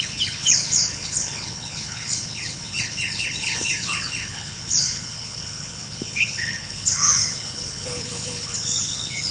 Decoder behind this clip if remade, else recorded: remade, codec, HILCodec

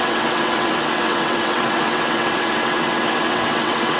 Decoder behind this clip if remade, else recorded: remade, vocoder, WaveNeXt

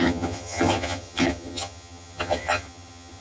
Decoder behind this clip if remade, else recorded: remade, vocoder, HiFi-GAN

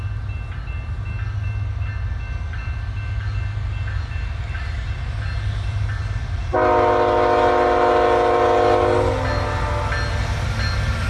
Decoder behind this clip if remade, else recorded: recorded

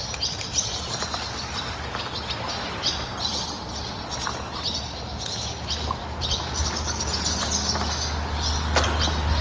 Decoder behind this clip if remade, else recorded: recorded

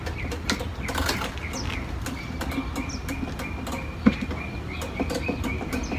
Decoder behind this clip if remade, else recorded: recorded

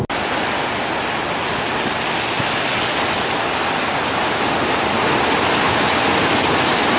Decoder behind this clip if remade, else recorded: recorded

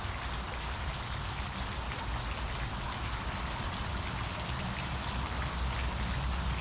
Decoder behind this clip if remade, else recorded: recorded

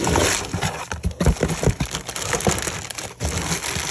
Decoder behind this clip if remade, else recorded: recorded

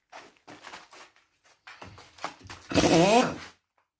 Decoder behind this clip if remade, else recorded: recorded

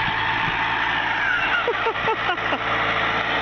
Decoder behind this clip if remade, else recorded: recorded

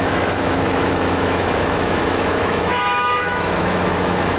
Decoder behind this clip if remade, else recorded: remade, autoencoder, DAC-VAE